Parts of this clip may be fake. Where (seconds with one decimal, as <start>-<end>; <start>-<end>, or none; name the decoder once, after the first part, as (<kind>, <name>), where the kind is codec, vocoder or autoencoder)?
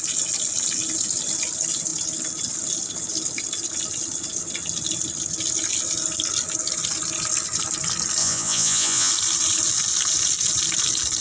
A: 8.2-9.1 (vocoder, Vocos)